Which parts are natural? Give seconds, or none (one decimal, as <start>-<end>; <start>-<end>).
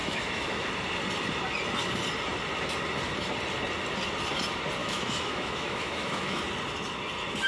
0.7-4.8; 6.4-7.5